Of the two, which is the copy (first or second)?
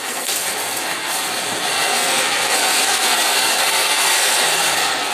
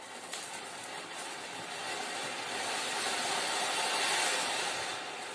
first